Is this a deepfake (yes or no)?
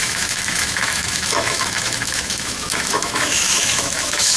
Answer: yes